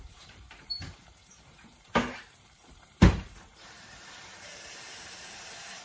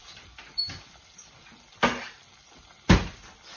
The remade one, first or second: first